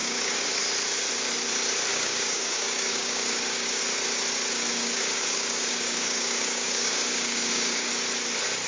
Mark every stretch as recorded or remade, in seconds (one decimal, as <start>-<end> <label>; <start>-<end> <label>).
0.0-0.6 remade; 0.6-1.9 recorded; 1.9-3.8 remade; 3.8-4.7 recorded; 4.7-7.9 remade; 7.9-8.7 recorded